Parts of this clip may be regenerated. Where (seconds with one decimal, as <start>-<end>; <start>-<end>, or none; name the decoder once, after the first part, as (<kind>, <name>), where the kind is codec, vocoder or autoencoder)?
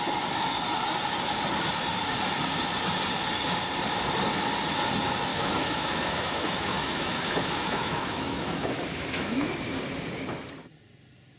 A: 5.3-9.5 (autoencoder, DAC-VAE)